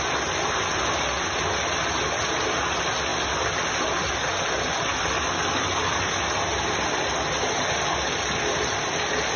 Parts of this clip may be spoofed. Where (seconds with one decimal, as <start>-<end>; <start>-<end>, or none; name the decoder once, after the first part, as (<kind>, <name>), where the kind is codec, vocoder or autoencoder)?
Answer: none